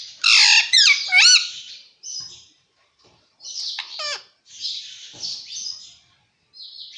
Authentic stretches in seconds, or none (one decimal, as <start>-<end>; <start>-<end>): 0.0-0.6; 4.8-7.0